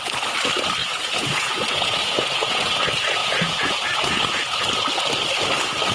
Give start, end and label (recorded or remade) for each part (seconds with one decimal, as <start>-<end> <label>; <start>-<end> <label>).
0.0-0.8 recorded; 0.8-2.8 remade; 2.8-3.2 recorded; 3.2-4.6 remade; 4.6-5.9 recorded